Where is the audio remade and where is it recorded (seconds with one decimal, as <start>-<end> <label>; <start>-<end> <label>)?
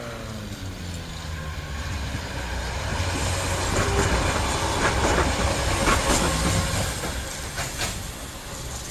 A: 0.0-8.9 recorded